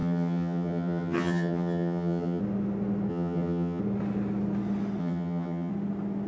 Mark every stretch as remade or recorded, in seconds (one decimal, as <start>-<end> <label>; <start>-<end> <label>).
0.0-2.4 remade; 2.4-3.1 recorded; 3.1-3.8 remade; 3.8-5.0 recorded; 5.0-5.7 remade; 5.7-6.3 recorded

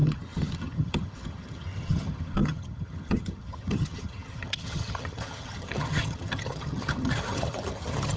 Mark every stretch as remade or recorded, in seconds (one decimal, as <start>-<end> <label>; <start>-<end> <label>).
0.0-8.2 remade